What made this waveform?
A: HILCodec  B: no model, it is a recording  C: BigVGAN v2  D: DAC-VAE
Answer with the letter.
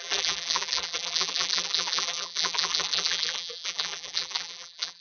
C